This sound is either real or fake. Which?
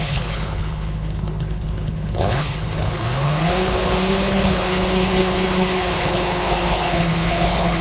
fake